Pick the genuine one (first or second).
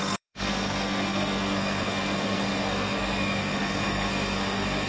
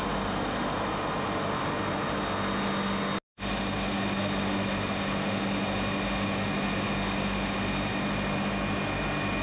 second